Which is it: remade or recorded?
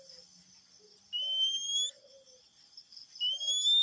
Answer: recorded